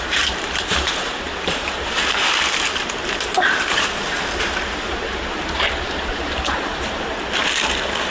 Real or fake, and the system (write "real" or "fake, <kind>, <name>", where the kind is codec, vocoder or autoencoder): fake, vocoder, BigVGAN v2